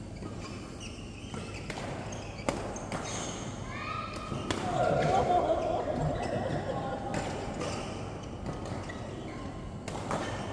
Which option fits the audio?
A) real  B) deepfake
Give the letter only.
A